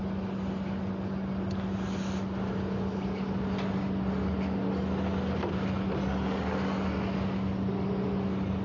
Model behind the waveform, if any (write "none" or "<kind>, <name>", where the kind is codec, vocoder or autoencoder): none